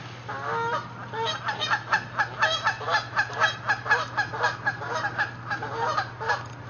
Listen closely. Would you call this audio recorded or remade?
recorded